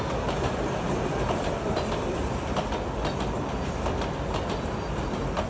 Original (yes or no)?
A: yes